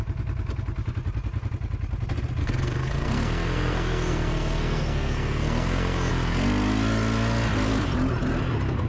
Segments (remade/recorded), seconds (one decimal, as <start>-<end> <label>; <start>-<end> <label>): 0.0-2.4 recorded; 2.4-6.1 remade; 6.1-8.9 recorded